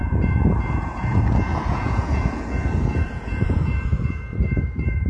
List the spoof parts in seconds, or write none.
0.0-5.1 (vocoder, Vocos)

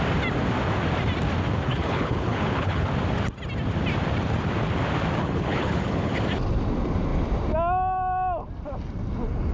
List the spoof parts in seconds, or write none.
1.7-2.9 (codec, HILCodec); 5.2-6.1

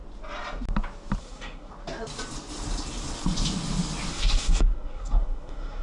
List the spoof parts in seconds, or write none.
1.2-1.7 (codec, SNAC); 4.1-5.8

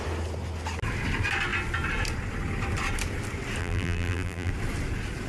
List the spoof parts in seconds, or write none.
3.6-4.5 (vocoder, BigVGAN v2)

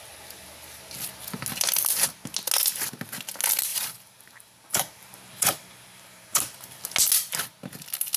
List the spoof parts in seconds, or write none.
3.7-6.8 (vocoder, BigVGAN v2)